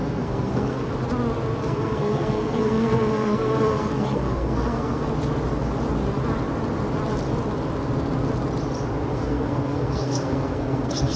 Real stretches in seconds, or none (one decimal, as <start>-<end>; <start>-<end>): 0.9-1.6; 5.1-9.1